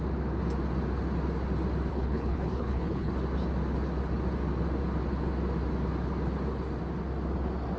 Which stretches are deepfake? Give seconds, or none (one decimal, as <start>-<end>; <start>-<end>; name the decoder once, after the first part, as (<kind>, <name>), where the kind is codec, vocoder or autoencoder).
1.9-3.1 (codec, HILCodec)